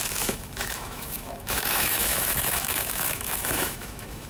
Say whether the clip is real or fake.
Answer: fake